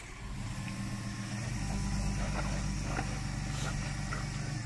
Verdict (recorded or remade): recorded